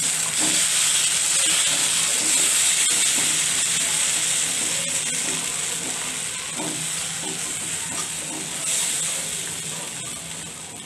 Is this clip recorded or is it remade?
recorded